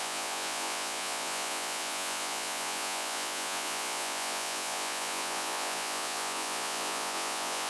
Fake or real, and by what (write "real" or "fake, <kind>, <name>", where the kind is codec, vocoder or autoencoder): fake, vocoder, Vocos